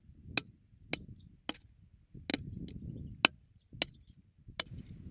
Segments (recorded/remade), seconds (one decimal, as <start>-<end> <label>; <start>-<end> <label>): 0.0-5.1 recorded